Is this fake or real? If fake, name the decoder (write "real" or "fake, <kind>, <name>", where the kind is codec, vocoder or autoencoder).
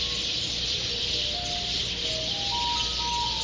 real